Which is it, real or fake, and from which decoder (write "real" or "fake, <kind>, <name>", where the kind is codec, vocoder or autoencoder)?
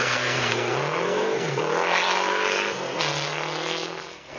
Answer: fake, codec, SNAC